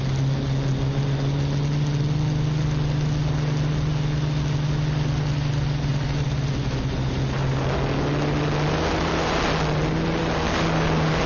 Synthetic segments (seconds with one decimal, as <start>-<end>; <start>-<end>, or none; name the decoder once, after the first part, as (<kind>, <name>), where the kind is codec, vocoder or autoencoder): none